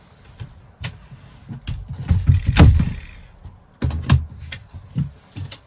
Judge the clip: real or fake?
real